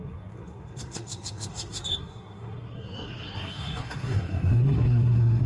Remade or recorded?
remade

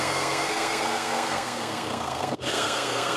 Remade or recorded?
remade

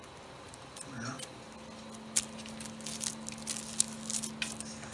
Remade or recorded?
recorded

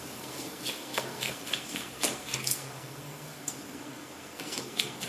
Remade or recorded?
remade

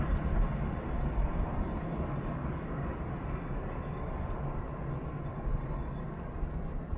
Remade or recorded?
recorded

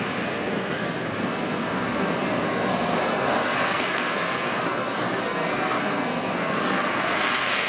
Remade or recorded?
remade